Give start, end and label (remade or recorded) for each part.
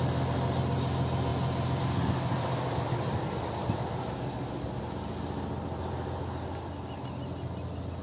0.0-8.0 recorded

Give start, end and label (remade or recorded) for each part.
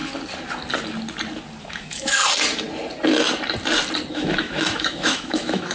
0.0-1.6 recorded; 1.6-2.2 remade; 2.2-4.1 recorded; 4.1-5.7 remade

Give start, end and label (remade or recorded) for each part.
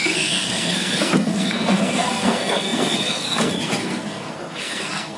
0.0-5.2 remade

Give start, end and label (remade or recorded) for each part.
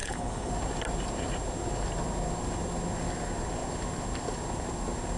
0.0-0.5 remade; 0.5-5.2 recorded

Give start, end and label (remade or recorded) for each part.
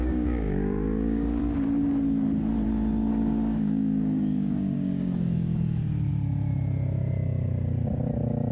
0.0-1.4 remade; 1.4-3.1 recorded; 3.1-6.1 remade; 6.1-8.5 recorded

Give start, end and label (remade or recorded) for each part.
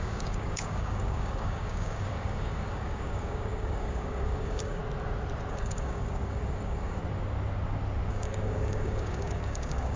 0.0-4.8 remade; 4.8-5.5 recorded; 5.5-7.0 remade; 7.0-8.1 recorded; 8.1-10.0 remade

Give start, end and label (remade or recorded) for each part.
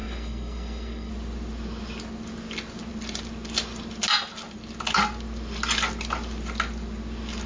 0.0-1.1 remade; 1.1-7.5 recorded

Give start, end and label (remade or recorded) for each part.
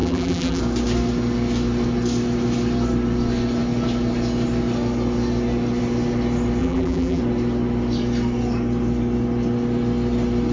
0.0-0.6 remade; 0.6-6.6 recorded; 6.6-7.2 remade; 7.2-10.5 recorded